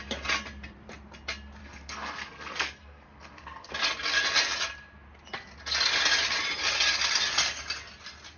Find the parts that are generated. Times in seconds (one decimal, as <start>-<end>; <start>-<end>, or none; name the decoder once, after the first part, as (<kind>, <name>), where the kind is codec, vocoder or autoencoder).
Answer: 1.6-3.7 (codec, SNAC)